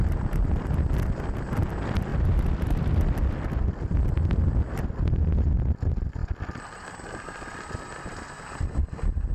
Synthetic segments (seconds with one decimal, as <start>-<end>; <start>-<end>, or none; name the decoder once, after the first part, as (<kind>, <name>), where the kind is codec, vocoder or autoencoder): 2.1-4.9 (vocoder, BigVGAN v2); 6.2-9.3